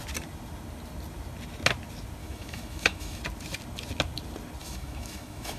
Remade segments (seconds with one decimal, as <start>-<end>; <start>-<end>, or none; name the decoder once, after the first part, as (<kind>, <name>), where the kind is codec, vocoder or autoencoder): 2.2-3.2 (autoencoder, DAC-VAE); 4.6-5.6